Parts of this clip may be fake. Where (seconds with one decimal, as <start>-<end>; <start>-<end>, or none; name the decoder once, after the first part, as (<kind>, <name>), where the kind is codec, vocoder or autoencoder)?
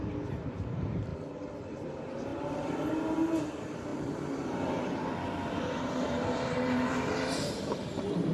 0.0-1.1 (vocoder, BigVGAN v2); 1.7-2.3; 2.9-8.3